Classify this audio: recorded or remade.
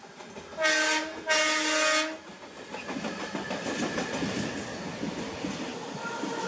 recorded